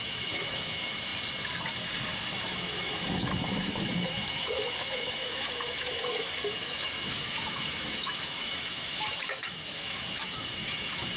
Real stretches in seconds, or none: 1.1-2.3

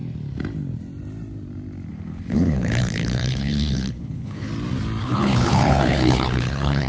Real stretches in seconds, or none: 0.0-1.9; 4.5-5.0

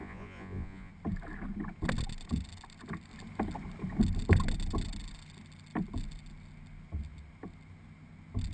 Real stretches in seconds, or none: 0.9-8.5

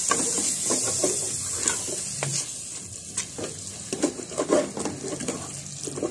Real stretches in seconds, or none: 0.0-6.1

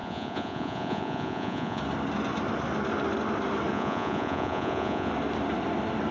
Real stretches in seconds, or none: 1.8-3.7; 5.1-6.1

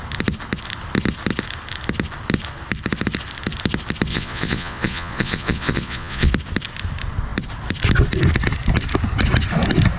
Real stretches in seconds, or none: 0.0-4.1; 6.3-10.0

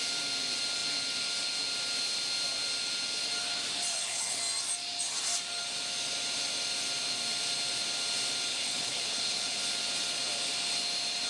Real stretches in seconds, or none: 0.0-3.9; 4.4-8.5; 9.6-11.3

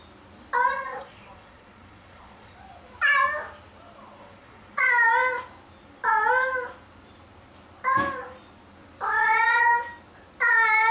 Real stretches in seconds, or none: 0.0-0.7; 2.6-4.2; 4.9-9.2; 9.7-10.9